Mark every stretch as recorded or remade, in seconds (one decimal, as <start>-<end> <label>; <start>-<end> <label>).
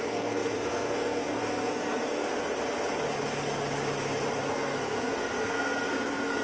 0.0-2.3 remade; 2.3-4.5 recorded; 4.5-6.4 remade